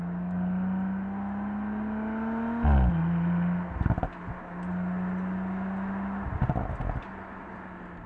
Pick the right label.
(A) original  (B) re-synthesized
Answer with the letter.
A